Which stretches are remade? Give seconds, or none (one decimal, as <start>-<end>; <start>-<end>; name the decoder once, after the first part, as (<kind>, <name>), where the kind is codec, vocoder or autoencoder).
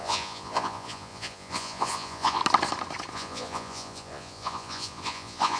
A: 0.0-2.4 (vocoder, Vocos); 3.1-5.6